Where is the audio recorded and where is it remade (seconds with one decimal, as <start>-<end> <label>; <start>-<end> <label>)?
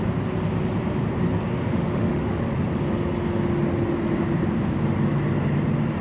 0.0-1.5 recorded; 1.5-2.4 remade; 2.4-6.0 recorded